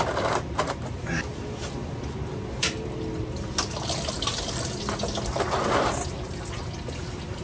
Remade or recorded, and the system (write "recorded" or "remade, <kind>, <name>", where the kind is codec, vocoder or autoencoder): recorded